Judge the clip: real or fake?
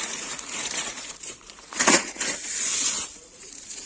fake